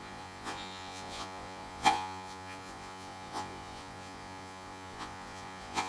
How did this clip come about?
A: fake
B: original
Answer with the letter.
A